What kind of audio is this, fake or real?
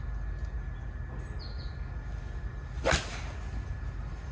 real